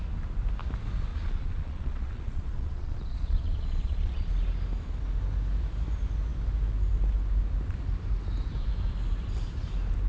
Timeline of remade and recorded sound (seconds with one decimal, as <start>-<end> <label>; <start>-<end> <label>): 0.0-1.1 recorded; 1.1-4.3 remade; 4.3-10.1 recorded